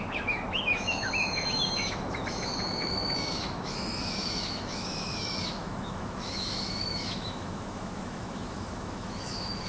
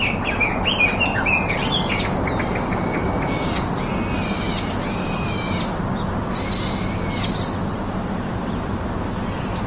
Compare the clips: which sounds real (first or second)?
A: second